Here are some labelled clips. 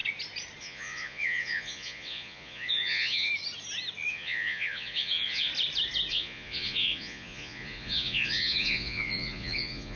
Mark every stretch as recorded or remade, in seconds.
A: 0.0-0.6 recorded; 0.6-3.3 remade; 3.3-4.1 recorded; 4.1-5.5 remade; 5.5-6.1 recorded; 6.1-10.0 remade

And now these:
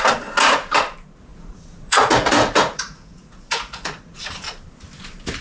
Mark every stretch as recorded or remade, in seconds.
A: 0.0-1.3 recorded; 1.3-4.2 remade; 4.2-5.4 recorded

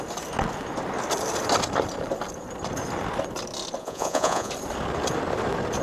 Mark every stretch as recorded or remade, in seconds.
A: 0.0-3.8 recorded; 3.8-4.5 remade; 4.5-5.8 recorded